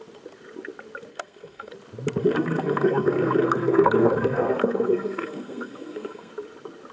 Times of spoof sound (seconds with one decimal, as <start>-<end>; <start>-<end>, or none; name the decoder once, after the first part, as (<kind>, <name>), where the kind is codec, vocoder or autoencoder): 1.1-1.7 (codec, SNAC); 2.2-6.3